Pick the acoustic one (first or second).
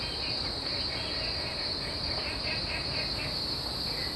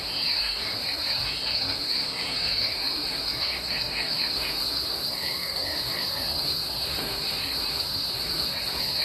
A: first